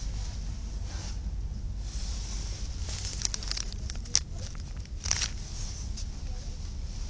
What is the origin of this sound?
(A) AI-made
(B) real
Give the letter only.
B